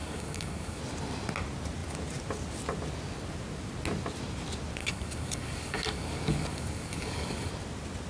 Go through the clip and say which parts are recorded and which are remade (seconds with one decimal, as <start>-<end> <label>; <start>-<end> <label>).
0.0-0.8 remade; 0.8-4.8 recorded; 4.8-7.5 remade; 7.5-8.1 recorded